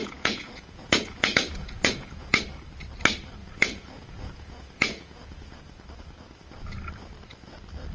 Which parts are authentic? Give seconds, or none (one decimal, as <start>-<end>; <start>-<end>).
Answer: 2.4-3.4; 5.6-7.9